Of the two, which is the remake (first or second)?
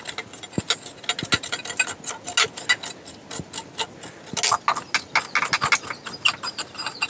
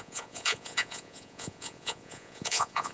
second